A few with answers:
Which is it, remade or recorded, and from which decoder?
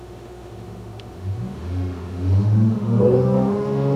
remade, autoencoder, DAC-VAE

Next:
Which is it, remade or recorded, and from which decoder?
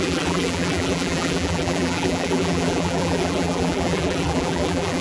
remade, vocoder, BigVGAN v2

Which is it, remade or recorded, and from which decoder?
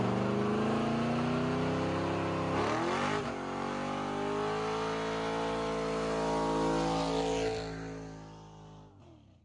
recorded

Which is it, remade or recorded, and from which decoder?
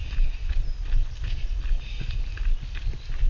recorded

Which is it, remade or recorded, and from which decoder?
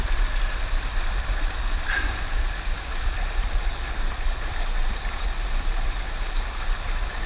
remade, vocoder, BigVGAN v2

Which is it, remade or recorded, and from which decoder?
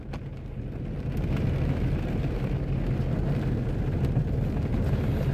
recorded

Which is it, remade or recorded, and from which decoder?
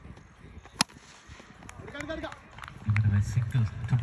recorded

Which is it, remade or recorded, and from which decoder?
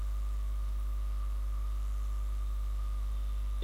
remade, vocoder, BigVGAN v2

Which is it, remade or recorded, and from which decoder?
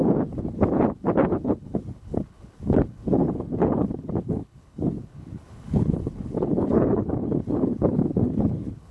remade, codec, HILCodec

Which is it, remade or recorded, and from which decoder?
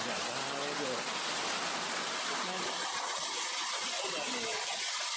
recorded